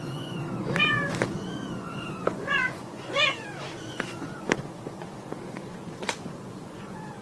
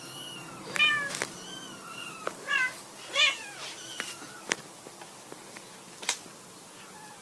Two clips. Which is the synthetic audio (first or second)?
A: first